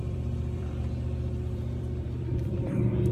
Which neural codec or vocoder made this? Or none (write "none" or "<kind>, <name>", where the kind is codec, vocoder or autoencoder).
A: vocoder, BigVGAN v2